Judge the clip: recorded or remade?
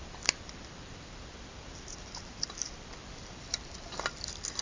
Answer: remade